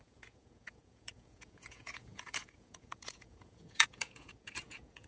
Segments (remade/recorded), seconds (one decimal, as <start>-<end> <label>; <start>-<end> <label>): 0.0-5.1 remade